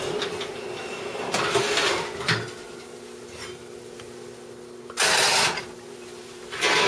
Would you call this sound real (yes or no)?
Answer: yes